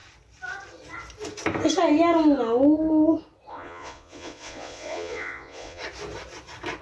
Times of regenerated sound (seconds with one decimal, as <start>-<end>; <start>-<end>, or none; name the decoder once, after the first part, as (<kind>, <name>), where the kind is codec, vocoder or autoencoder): 3.5-5.8 (vocoder, Vocos)